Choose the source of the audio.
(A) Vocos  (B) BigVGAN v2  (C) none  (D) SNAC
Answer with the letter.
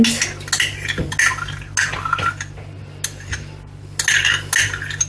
C